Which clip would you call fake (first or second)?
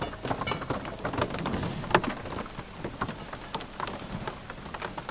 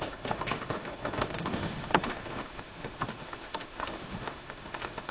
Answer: second